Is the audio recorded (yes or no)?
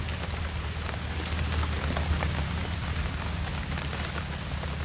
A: yes